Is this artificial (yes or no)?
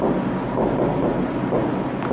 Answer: no